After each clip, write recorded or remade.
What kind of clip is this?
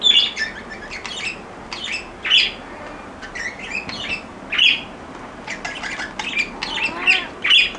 recorded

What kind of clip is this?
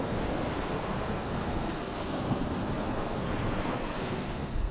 remade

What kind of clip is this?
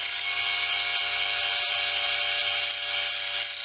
recorded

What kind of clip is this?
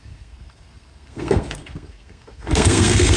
remade